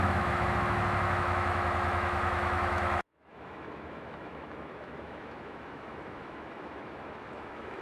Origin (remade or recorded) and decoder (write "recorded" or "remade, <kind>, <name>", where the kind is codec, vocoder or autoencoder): remade, autoencoder, DAC-VAE